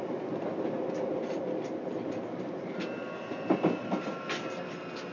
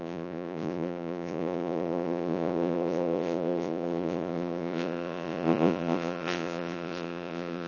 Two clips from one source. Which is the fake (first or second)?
second